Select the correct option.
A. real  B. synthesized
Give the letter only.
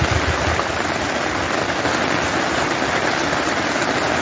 A